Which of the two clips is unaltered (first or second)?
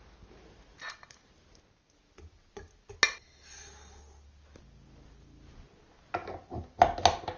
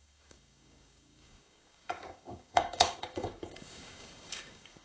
first